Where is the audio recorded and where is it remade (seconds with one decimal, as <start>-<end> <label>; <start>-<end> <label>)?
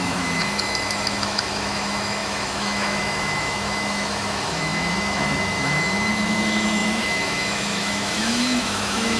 0.0-9.2 remade